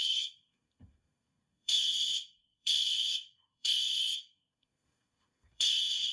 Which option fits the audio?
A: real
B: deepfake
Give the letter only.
B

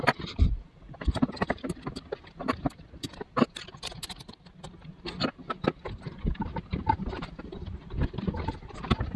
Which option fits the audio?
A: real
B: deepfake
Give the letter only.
A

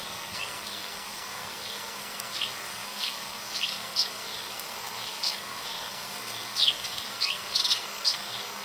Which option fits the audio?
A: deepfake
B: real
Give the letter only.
A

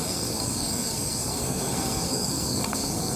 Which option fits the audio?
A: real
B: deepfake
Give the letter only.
B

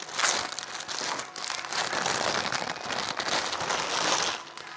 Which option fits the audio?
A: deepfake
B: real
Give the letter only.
B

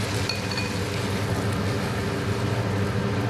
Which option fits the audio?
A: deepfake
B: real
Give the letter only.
B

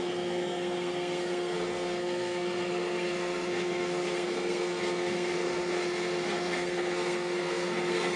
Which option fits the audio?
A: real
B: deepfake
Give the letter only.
B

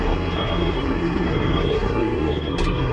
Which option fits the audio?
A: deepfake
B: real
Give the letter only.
A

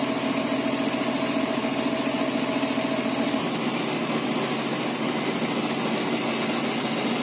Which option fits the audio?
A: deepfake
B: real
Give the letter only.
B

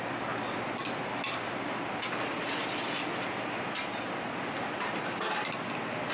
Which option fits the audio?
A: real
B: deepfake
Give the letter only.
A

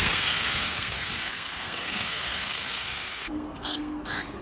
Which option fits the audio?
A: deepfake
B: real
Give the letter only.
A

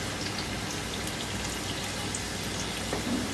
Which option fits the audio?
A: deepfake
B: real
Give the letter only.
B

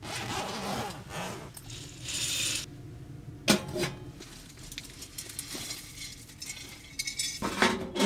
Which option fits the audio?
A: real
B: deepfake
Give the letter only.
A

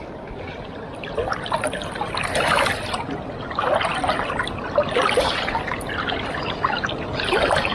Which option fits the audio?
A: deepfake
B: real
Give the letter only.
B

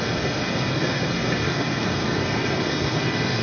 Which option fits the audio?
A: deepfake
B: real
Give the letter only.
A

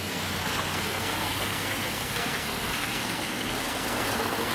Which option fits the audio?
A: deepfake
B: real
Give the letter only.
A